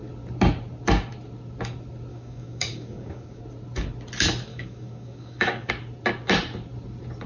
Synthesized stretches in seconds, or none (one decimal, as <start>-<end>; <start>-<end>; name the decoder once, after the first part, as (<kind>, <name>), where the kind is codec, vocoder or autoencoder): 2.1-3.4 (codec, DAC); 4.5-5.7